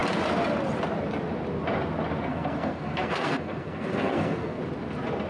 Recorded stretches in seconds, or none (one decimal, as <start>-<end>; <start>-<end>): 0.0-2.3; 4.6-5.3